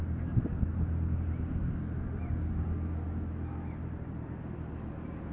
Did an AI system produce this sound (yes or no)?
no